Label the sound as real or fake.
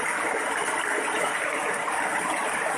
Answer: real